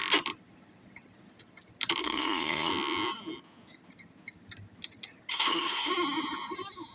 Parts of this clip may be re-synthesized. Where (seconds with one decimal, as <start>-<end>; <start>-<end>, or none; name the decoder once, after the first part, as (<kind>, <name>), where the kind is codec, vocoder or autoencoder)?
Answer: 2.0-2.7 (codec, SNAC); 5.3-5.9